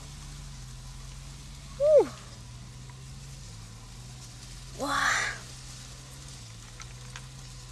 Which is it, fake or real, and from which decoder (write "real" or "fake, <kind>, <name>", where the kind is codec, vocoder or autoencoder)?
real